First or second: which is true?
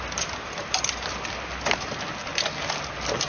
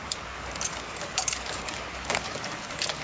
first